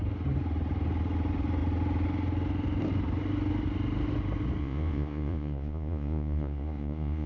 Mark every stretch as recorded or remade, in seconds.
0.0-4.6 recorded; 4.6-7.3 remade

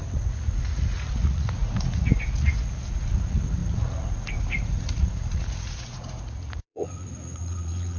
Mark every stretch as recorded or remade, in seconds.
0.0-8.0 remade

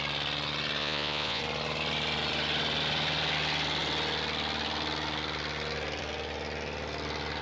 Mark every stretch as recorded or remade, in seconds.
0.0-0.8 recorded; 0.8-1.4 remade; 1.4-7.4 recorded

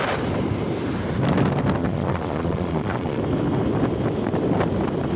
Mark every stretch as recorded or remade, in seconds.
0.0-1.8 recorded; 1.8-3.2 remade; 3.2-5.2 recorded

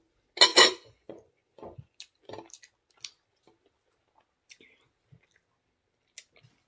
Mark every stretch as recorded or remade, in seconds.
0.0-0.5 recorded; 0.5-2.0 remade; 2.0-6.7 recorded